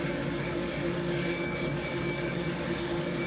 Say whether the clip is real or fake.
fake